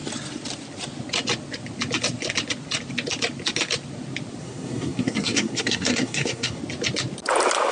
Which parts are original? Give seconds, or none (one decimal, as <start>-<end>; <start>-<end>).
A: 0.0-4.4; 6.6-7.7